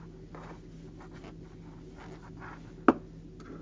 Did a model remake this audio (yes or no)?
no